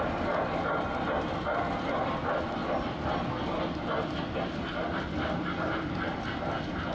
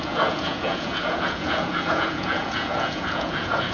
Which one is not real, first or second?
second